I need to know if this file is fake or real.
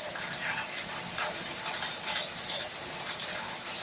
fake